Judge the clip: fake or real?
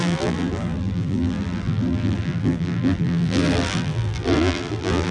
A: fake